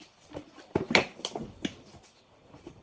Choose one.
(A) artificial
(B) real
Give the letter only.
B